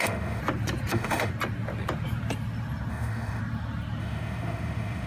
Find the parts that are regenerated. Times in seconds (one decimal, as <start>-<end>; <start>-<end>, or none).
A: 0.0-0.4; 0.9-1.3; 2.9-3.4; 4.0-5.1